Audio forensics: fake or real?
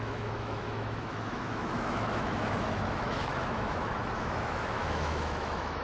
fake